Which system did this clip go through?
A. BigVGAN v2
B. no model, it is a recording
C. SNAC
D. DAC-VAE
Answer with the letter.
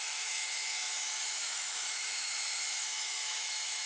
D